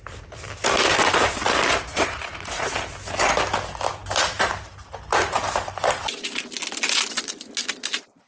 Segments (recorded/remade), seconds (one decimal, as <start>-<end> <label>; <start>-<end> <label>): 0.0-1.9 recorded; 1.9-2.7 remade; 2.7-8.3 recorded